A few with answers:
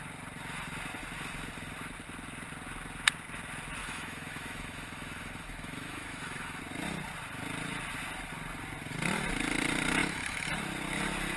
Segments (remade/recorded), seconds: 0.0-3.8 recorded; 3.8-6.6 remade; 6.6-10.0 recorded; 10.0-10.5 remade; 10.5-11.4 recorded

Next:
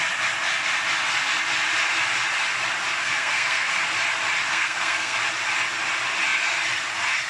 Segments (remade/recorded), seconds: 0.0-3.0 recorded; 3.0-3.7 remade; 3.7-4.5 recorded; 4.5-5.2 remade; 5.2-7.3 recorded

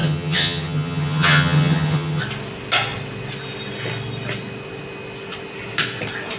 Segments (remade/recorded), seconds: 0.0-2.2 remade; 2.2-6.4 recorded